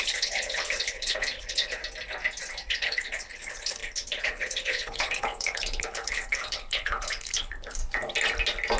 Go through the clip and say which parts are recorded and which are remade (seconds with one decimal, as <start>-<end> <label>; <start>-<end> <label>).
0.0-1.8 remade; 1.8-2.7 recorded; 2.7-7.8 remade; 7.8-8.8 recorded